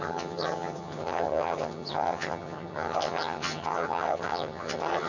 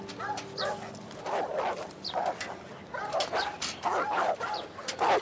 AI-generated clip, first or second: first